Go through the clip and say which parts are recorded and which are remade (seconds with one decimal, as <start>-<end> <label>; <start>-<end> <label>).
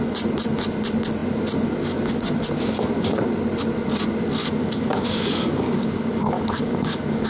0.0-4.4 recorded; 4.4-7.3 remade